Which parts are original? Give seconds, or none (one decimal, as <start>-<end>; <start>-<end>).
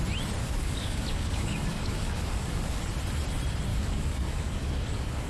0.0-0.4; 2.8-3.7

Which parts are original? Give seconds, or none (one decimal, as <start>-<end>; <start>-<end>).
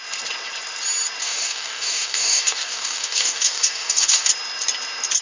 0.0-1.2; 4.3-5.2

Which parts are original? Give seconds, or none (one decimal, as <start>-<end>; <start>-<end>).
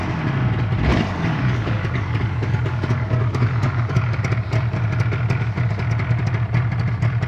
0.0-0.9; 4.2-7.3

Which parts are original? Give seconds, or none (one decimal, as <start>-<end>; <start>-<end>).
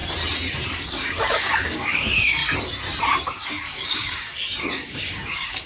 0.0-0.9; 2.4-3.3